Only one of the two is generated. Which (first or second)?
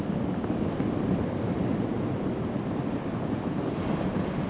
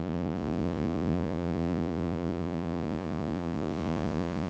second